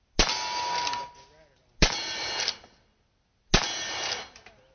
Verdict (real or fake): real